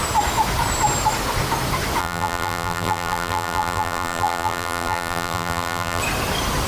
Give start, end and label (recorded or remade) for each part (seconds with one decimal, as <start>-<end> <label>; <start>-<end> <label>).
0.0-2.0 recorded; 2.0-6.0 remade; 6.0-6.7 recorded